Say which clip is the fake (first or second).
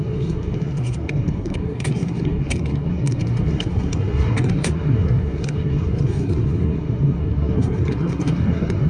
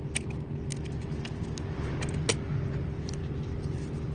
first